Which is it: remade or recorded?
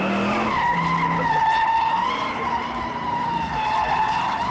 recorded